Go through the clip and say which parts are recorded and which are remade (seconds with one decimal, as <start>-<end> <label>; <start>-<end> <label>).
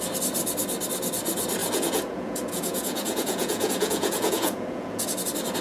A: 0.0-1.6 recorded; 1.6-5.0 remade; 5.0-5.6 recorded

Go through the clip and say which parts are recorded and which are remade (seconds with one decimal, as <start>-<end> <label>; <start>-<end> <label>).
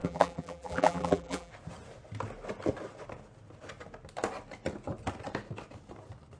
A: 0.0-1.5 remade; 1.5-6.4 recorded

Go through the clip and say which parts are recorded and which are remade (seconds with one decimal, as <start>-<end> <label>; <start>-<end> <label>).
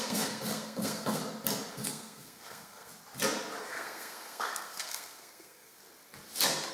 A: 0.0-1.2 remade; 1.2-1.7 recorded; 1.7-2.9 remade; 2.9-3.6 recorded; 3.6-5.8 remade; 5.8-6.7 recorded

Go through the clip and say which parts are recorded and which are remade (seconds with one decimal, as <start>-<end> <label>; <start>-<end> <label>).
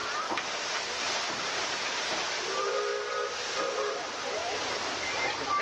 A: 0.0-2.9 remade; 2.9-3.5 recorded; 3.5-5.6 remade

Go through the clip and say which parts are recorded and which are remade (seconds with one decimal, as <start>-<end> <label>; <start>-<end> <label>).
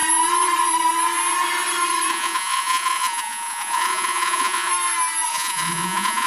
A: 0.0-2.1 recorded; 2.1-4.7 remade; 4.7-5.3 recorded; 5.3-6.3 remade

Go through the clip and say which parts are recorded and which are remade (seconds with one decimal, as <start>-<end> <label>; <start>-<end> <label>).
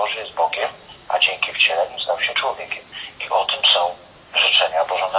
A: 0.0-0.6 recorded; 0.6-1.1 remade; 1.1-5.2 recorded